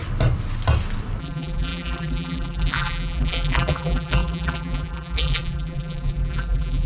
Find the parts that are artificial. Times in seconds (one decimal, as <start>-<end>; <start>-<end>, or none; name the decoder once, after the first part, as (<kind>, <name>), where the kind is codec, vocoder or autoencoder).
1.2-6.9 (vocoder, BigVGAN v2)